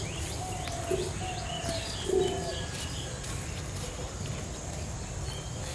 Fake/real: real